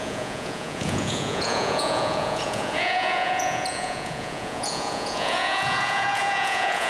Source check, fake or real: fake